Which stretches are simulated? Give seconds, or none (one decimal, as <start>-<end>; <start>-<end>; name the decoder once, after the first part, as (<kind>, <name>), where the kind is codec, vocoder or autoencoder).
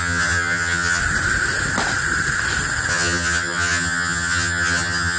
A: 0.0-1.0 (vocoder, HiFi-GAN); 2.9-5.2